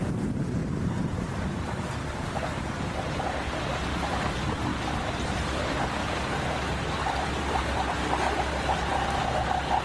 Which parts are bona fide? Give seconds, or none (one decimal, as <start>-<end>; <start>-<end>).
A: 0.0-0.6; 1.9-4.7; 5.6-7.0; 7.7-9.8